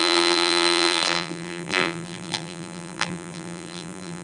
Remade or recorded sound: remade